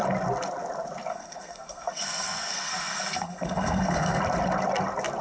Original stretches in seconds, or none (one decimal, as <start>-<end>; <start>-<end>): 0.0-1.1; 4.2-5.2